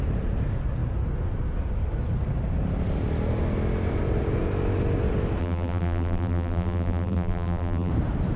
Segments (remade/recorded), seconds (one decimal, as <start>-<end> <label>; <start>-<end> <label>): 0.0-5.4 recorded; 5.4-7.9 remade; 7.9-8.4 recorded